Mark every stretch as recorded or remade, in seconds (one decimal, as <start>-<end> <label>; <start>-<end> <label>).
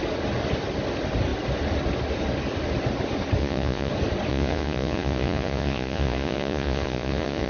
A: 0.0-3.4 recorded; 3.4-3.9 remade; 3.9-4.3 recorded; 4.3-7.5 remade